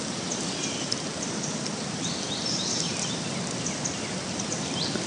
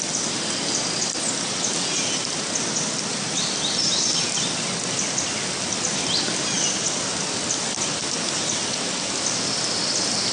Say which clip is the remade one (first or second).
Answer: first